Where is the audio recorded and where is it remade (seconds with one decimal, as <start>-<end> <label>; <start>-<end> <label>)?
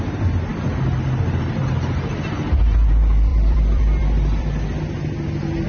0.0-0.5 recorded; 0.5-2.1 remade; 2.1-3.3 recorded; 3.3-4.8 remade; 4.8-5.7 recorded